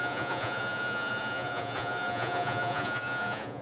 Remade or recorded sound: remade